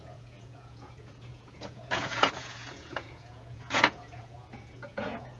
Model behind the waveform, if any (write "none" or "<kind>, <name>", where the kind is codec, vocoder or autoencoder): vocoder, Vocos